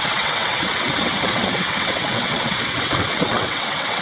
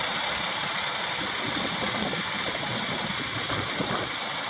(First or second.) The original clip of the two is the second